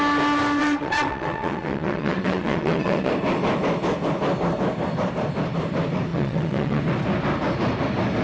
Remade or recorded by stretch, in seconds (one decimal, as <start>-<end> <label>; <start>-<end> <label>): 0.0-0.6 recorded; 0.6-3.1 remade; 3.1-6.1 recorded; 6.1-6.8 remade; 6.8-8.2 recorded